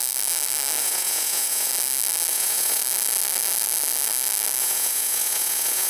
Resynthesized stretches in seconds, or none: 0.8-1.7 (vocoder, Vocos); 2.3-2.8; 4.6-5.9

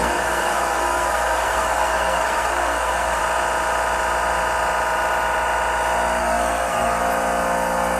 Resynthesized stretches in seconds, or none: 0.0-3.2 (codec, SNAC); 6.2-7.0